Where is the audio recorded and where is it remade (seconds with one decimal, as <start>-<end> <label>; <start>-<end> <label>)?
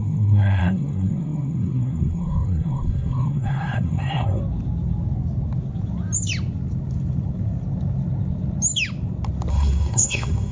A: 0.0-4.4 remade; 4.4-9.5 recorded; 9.5-10.5 remade